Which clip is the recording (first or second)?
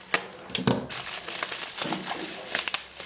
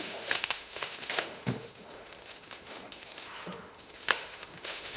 first